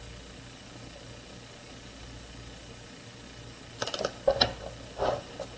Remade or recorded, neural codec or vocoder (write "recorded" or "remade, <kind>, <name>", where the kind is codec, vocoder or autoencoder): recorded